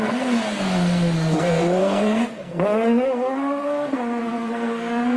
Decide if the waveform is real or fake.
fake